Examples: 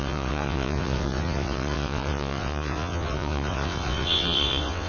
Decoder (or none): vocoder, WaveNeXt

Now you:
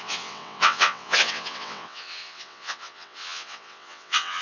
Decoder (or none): vocoder, WaveNeXt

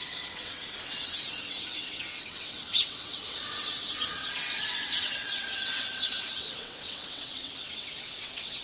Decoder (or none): vocoder, WaveNeXt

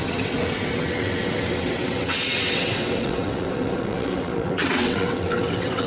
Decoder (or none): vocoder, WaveNeXt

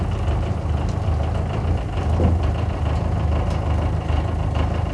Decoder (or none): none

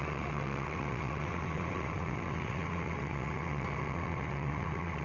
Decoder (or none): vocoder, WaveNeXt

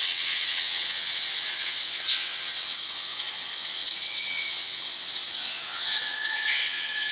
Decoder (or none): vocoder, WaveNeXt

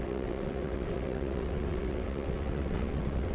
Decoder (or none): vocoder, WaveNeXt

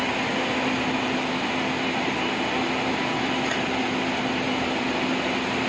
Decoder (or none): none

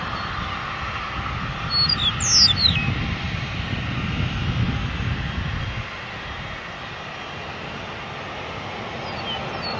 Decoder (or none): none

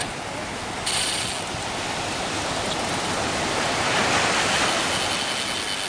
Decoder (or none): none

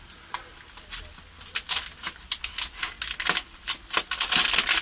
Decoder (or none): none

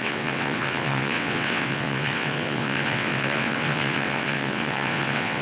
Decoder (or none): vocoder, WaveNeXt